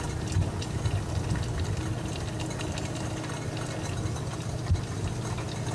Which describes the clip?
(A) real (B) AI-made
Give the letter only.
A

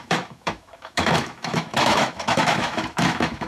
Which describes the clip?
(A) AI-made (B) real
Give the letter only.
A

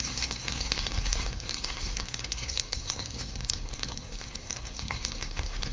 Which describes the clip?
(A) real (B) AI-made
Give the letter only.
B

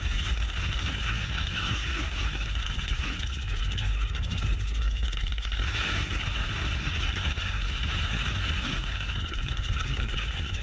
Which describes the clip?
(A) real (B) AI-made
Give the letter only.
B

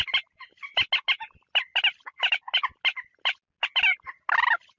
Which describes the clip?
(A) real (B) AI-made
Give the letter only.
A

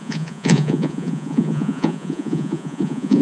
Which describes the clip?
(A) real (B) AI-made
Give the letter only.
B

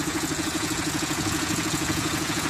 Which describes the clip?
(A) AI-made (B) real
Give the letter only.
A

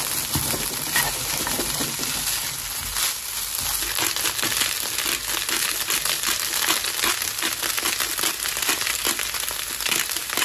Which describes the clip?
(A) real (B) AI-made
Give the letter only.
A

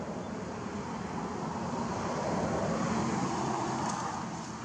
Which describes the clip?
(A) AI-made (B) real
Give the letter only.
B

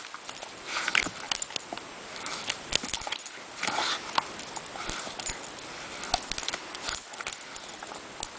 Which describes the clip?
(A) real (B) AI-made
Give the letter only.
A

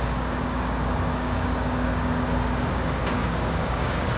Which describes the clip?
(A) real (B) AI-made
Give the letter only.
B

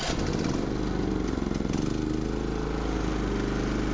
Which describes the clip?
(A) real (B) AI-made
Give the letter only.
A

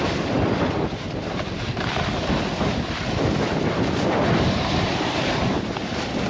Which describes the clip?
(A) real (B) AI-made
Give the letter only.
A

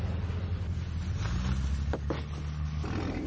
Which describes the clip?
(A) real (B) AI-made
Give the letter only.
A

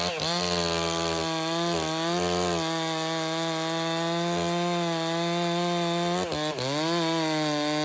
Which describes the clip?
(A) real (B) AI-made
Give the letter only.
A